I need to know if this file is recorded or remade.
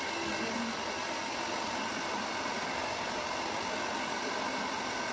recorded